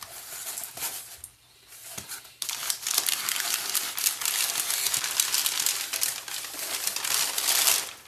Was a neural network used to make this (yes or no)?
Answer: no